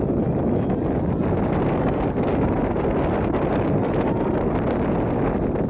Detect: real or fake real